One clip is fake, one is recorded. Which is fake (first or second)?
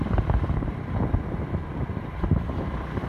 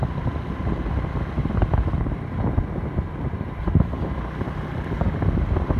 first